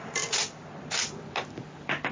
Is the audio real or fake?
real